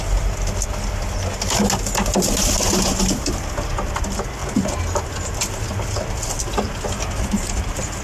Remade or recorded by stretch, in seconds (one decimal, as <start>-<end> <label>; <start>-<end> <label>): 0.0-8.0 recorded